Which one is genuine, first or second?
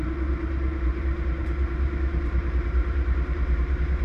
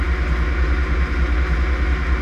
second